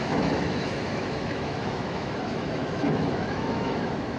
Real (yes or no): no